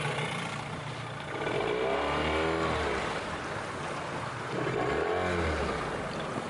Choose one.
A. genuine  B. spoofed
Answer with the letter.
A